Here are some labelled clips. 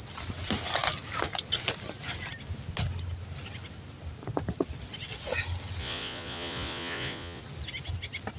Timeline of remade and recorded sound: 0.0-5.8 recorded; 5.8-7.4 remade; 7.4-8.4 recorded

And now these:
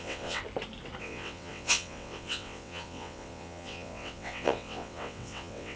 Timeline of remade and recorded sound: 0.0-0.4 remade; 0.4-1.0 recorded; 1.0-5.8 remade

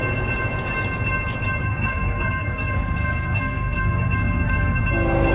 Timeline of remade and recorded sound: 0.0-1.6 recorded; 1.6-4.8 remade; 4.8-5.3 recorded

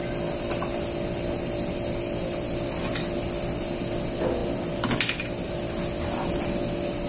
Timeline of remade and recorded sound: 0.0-7.1 recorded

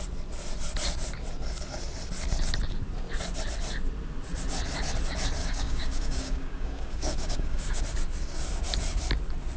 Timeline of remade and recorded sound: 0.0-5.4 recorded; 5.4-7.8 remade; 7.8-9.6 recorded

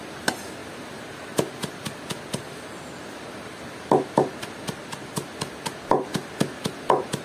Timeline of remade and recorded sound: 0.0-7.2 recorded

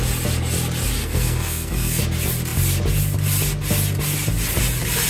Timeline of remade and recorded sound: 0.0-1.0 recorded; 1.0-2.0 remade; 2.0-5.1 recorded

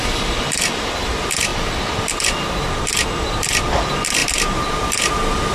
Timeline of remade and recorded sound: 0.0-5.5 recorded